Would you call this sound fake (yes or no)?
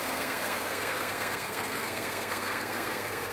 yes